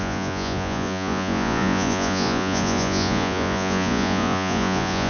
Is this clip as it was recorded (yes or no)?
no